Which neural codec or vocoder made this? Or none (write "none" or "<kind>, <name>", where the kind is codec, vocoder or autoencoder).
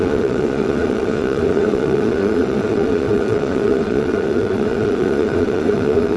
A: vocoder, Vocos